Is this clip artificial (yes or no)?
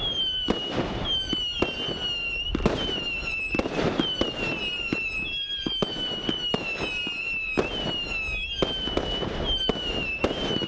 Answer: no